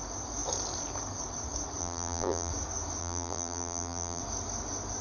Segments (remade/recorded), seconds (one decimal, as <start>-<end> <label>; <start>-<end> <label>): 0.0-1.8 recorded; 1.8-2.5 remade; 2.5-3.0 recorded; 3.0-4.2 remade; 4.2-5.0 recorded